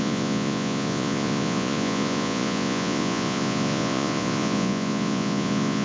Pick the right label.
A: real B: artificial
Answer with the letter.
B